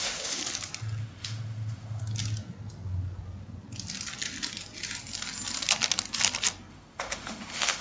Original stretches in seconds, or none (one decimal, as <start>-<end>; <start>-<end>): 0.4-1.0; 2.0-6.7